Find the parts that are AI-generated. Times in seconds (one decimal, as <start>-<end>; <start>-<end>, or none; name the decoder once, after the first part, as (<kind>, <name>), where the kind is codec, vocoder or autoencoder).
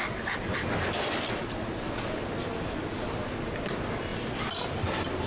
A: none